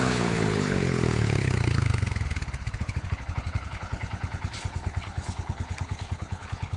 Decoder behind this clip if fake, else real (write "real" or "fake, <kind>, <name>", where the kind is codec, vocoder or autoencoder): fake, codec, HILCodec